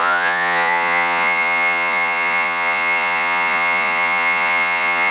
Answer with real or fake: fake